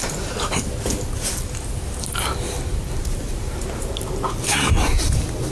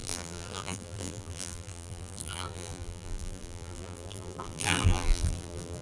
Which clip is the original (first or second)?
first